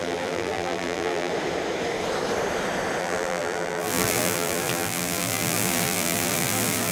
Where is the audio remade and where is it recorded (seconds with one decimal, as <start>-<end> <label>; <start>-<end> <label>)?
0.0-1.3 remade; 1.3-3.0 recorded; 3.0-6.9 remade